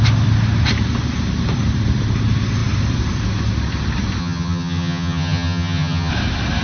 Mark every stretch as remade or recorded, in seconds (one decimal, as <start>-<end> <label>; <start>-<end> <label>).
0.0-4.2 recorded; 4.2-6.1 remade; 6.1-6.6 recorded